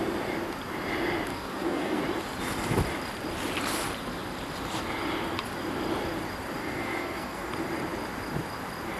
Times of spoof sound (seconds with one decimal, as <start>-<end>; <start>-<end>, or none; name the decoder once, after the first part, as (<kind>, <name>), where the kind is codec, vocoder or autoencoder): 1.3-2.0 (codec, SNAC); 6.6-7.5